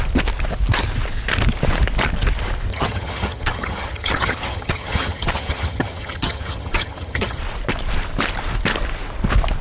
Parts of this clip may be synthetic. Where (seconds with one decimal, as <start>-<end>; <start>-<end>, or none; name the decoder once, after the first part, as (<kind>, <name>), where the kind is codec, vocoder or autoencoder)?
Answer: 2.7-7.4 (vocoder, HiFi-GAN)